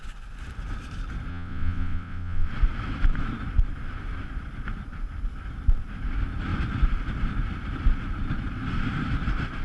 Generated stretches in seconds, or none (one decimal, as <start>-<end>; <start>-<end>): 1.3-2.5